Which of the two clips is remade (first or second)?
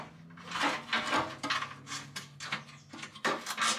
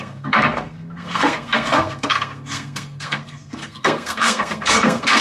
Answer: second